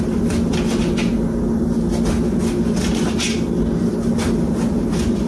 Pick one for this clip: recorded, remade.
recorded